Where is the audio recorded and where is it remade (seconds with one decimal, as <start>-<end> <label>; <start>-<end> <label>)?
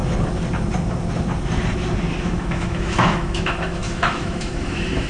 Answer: 0.0-2.2 recorded; 2.2-5.1 remade